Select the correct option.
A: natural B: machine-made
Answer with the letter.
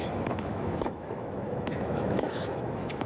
B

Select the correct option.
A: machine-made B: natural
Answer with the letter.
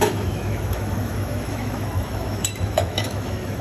A